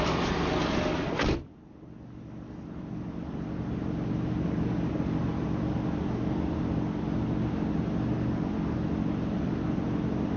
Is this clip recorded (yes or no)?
yes